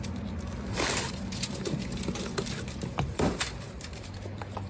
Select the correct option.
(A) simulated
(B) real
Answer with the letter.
A